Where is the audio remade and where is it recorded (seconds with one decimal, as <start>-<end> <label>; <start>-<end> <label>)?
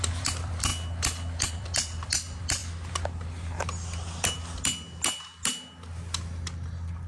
0.0-0.7 remade; 0.7-1.5 recorded; 1.5-2.6 remade; 2.6-7.1 recorded